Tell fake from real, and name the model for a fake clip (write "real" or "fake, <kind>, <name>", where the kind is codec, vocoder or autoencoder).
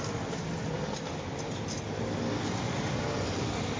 real